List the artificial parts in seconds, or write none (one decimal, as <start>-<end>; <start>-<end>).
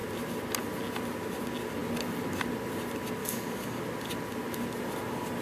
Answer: 3.2-3.8